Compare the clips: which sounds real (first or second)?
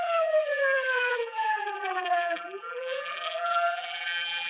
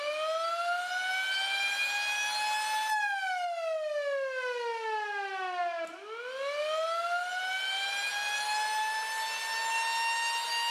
second